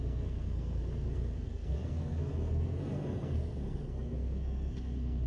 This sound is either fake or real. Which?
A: fake